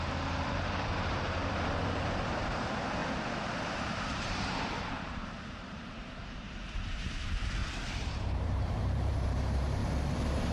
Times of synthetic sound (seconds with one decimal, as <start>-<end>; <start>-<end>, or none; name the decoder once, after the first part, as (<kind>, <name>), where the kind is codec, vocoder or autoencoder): 0.0-1.4 (vocoder, BigVGAN v2); 2.4-9.8